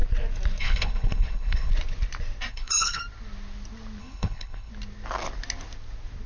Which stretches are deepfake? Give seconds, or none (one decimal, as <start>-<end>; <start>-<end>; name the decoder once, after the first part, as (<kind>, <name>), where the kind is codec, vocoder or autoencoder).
0.6-1.7 (codec, HILCodec); 2.5-3.0; 4.0-4.7